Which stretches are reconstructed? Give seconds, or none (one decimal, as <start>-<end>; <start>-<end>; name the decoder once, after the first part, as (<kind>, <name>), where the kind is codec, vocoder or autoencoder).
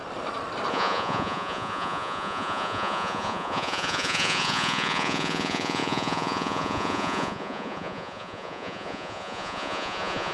0.7-10.3 (vocoder, Vocos)